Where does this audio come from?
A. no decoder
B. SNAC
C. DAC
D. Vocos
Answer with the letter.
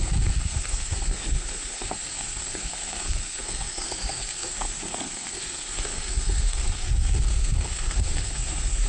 B